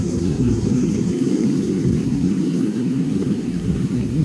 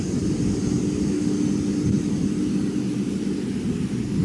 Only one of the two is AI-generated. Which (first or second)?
first